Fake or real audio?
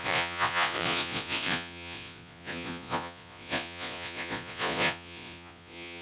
fake